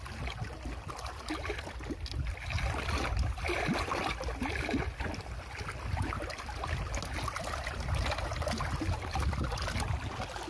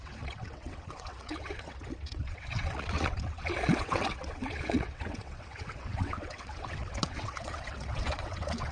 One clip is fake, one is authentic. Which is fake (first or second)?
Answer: second